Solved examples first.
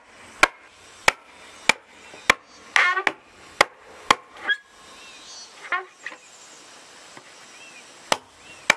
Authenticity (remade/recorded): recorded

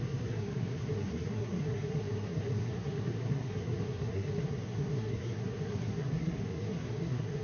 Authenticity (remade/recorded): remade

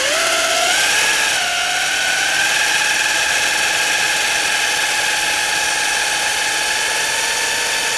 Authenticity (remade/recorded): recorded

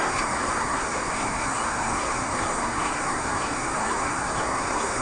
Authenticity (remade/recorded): remade